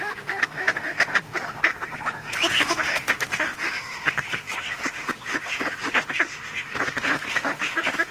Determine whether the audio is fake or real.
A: fake